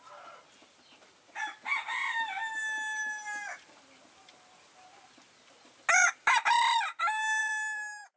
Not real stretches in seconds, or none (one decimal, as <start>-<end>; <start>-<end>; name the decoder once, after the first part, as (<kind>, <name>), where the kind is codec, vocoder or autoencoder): 6.0-7.0 (vocoder, BigVGAN v2); 7.4-8.2